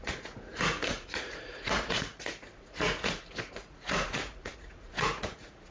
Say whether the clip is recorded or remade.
remade